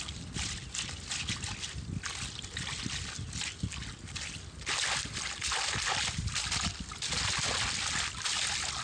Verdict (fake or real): real